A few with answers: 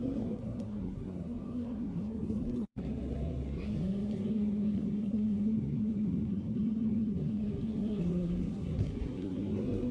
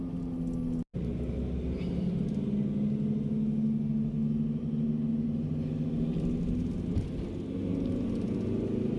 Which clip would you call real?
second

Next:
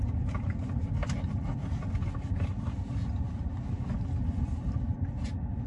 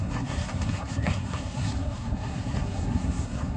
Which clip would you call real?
first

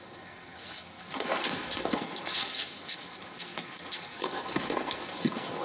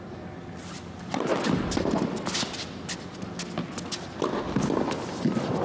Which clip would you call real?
second